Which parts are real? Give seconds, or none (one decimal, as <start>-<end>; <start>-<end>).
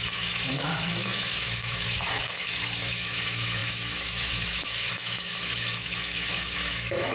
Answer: none